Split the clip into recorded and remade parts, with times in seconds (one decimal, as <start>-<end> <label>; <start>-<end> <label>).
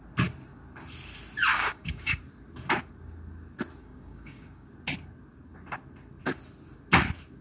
0.0-1.5 recorded; 1.5-2.2 remade; 2.2-3.8 recorded; 3.8-4.7 remade; 4.7-7.4 recorded